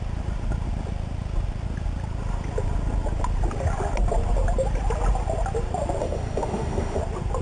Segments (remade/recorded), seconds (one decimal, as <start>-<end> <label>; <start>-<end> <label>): 0.0-6.0 recorded; 6.0-7.0 remade; 7.0-7.4 recorded